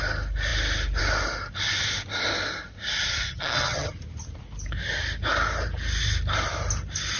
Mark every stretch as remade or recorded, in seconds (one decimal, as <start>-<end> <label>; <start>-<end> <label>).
0.0-3.2 recorded; 3.2-3.9 remade; 3.9-7.2 recorded